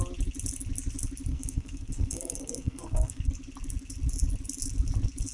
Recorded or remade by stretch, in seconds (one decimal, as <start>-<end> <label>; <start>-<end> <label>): 0.0-1.3 recorded; 1.3-3.3 remade; 3.3-5.3 recorded